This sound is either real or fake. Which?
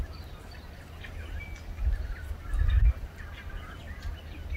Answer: real